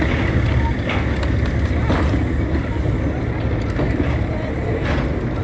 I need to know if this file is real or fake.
real